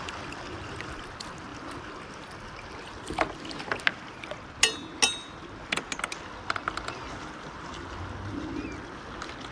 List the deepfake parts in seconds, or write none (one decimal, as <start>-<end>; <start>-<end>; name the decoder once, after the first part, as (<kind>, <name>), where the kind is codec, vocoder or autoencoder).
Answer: none